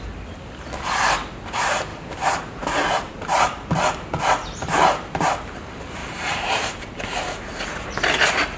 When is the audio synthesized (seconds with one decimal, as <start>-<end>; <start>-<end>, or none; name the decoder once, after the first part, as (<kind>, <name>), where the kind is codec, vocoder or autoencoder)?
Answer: 1.9-3.1 (vocoder, BigVGAN v2); 4.4-5.3; 6.0-6.9